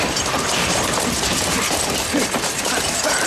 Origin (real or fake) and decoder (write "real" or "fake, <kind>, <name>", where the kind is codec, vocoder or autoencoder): fake, vocoder, BigVGAN v2